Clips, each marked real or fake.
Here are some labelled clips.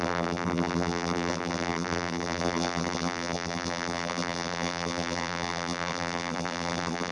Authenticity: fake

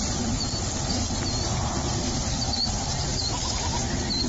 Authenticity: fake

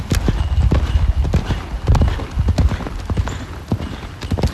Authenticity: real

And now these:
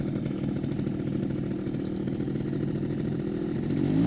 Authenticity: real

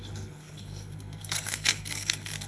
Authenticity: fake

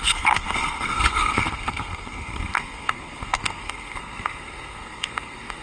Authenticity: fake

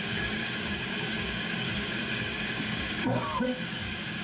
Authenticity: fake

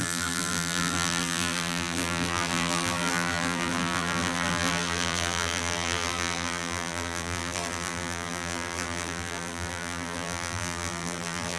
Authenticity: fake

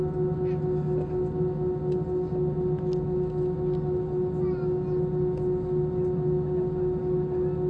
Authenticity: real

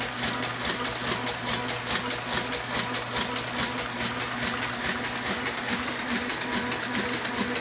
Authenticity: real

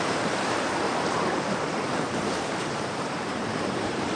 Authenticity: fake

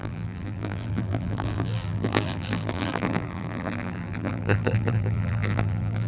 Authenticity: fake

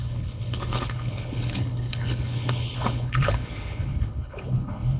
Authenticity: fake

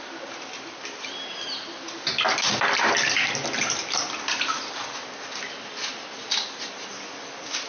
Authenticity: real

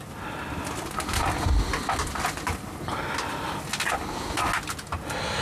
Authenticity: real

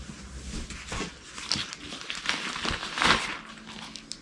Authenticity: real